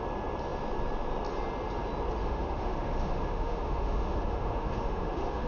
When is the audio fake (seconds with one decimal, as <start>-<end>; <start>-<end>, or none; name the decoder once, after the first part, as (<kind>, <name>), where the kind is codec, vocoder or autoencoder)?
2.2-5.5 (autoencoder, DAC-VAE)